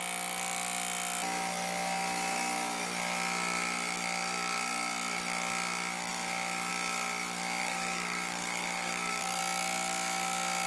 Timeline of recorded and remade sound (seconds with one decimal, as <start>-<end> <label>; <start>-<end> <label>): 0.0-7.6 recorded; 7.6-9.4 remade; 9.4-10.7 recorded